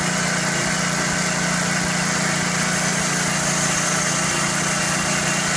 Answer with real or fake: real